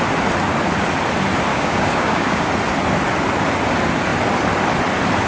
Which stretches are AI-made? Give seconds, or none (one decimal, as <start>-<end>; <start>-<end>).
1.5-2.5